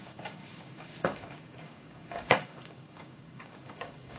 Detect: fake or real fake